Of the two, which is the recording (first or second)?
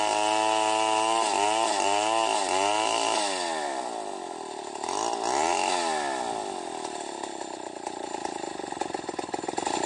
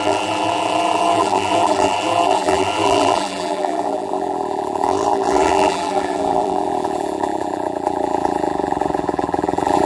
first